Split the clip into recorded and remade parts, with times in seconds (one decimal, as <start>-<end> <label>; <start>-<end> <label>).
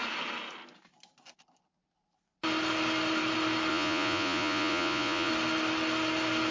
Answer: 0.0-3.7 recorded; 3.7-5.3 remade; 5.3-6.5 recorded